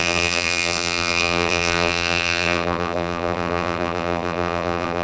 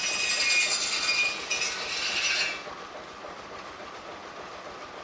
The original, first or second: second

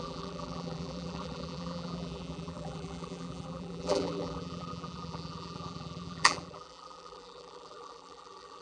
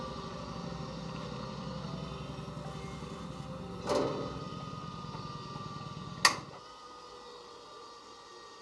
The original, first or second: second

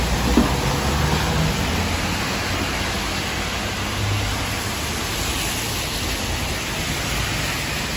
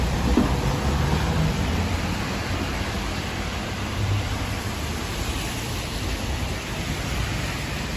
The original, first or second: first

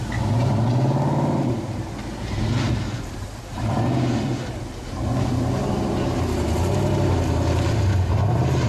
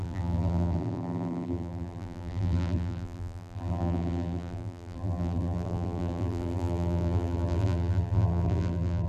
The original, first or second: first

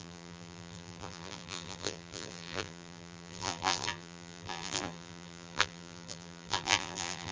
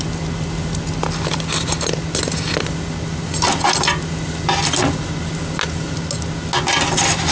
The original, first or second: second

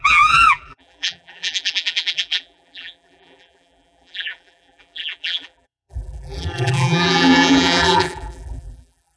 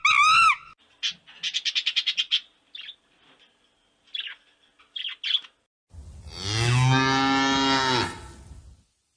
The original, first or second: second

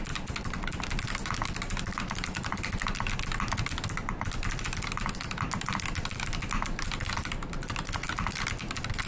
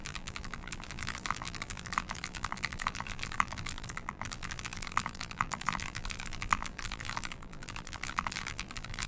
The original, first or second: first